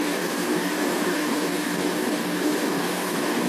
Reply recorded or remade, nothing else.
remade